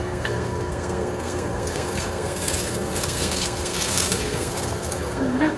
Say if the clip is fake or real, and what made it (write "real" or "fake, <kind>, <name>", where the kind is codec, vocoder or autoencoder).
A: fake, codec, SNAC